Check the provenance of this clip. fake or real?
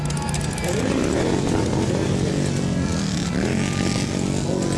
real